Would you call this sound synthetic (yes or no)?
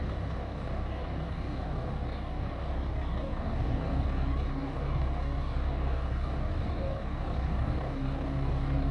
yes